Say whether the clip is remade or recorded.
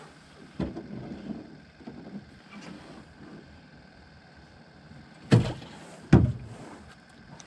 recorded